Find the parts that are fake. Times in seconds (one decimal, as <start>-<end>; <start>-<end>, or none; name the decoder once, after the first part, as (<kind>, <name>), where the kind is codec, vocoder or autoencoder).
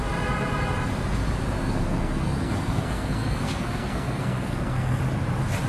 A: 1.6-5.0 (codec, SNAC)